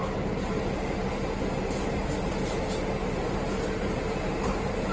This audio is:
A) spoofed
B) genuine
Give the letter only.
B